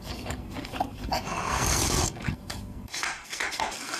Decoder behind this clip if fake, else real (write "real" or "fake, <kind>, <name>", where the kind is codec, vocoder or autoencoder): fake, codec, SNAC